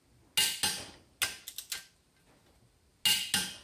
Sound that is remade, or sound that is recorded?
recorded